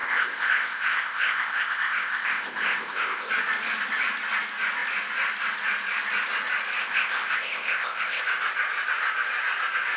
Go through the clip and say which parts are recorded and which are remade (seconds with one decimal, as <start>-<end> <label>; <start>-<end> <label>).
0.0-3.3 remade; 3.3-6.8 recorded; 6.8-8.2 remade; 8.2-10.0 recorded